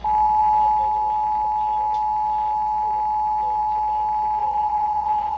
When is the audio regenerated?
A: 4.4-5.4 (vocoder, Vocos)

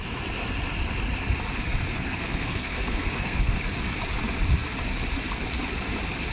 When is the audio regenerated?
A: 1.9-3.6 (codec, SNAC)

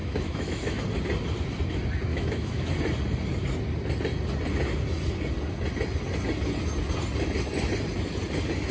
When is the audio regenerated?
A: 0.0-0.8 (autoencoder, DAC-VAE); 2.1-2.7

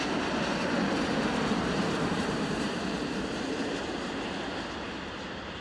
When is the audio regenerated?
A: 0.5-3.9 (vocoder, BigVGAN v2)

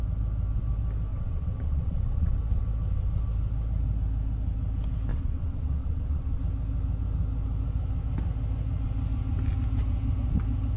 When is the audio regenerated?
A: 1.1-2.4 (vocoder, WaveNeXt); 5.1-6.4

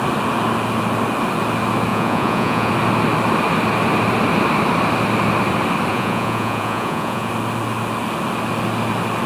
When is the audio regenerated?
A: 1.9-2.7 (vocoder, Vocos); 5.9-7.3

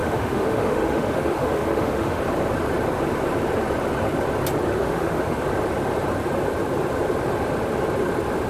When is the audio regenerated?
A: 0.0-2.2 (autoencoder, DAC-VAE); 4.7-5.4